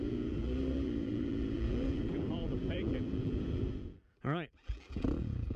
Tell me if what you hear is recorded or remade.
remade